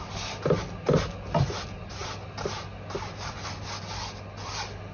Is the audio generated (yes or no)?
no